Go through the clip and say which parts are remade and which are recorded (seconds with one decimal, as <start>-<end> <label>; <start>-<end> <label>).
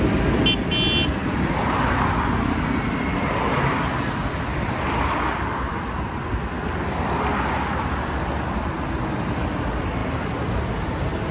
0.0-11.3 recorded